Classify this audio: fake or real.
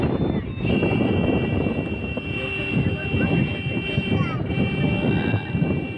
real